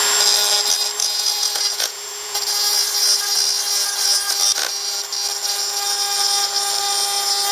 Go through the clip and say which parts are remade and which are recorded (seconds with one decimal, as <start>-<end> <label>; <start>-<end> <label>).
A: 0.0-1.0 recorded; 1.0-2.5 remade; 2.5-7.5 recorded